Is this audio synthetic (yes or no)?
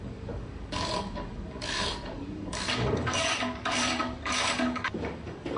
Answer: yes